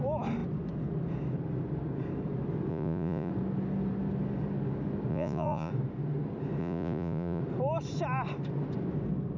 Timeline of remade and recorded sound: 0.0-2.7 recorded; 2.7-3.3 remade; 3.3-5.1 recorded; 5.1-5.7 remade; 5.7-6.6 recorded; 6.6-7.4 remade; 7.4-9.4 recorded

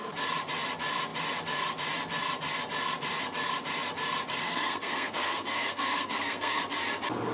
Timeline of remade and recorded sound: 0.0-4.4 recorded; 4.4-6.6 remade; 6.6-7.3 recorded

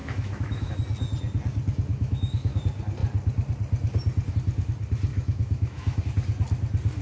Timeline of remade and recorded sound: 0.0-0.7 remade; 0.7-1.9 recorded; 1.9-2.6 remade; 2.6-5.1 recorded; 5.1-6.0 remade; 6.0-7.0 recorded

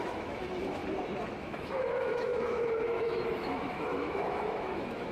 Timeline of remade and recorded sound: 0.0-0.8 remade; 0.8-1.4 recorded; 1.4-5.1 remade

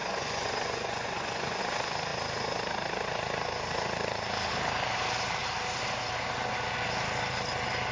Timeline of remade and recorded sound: 0.0-1.6 remade; 1.6-7.9 recorded

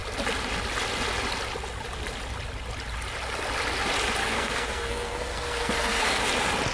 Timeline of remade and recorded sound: 0.0-4.2 recorded; 4.2-6.2 remade; 6.2-6.7 recorded

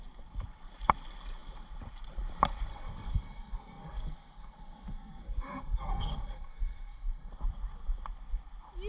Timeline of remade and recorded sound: 0.0-2.7 recorded; 2.7-7.3 remade; 7.3-8.9 recorded

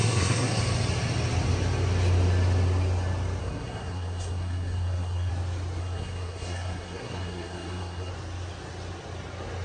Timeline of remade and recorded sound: 0.0-0.6 remade; 0.6-3.4 recorded; 3.4-5.3 remade; 5.3-5.8 recorded; 5.8-8.1 remade; 8.1-9.6 recorded